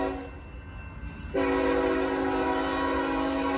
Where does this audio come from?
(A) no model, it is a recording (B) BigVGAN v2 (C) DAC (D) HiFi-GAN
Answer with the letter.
A